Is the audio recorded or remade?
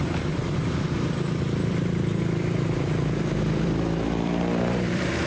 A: remade